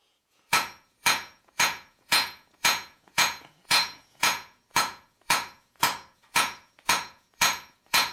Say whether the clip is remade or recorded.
remade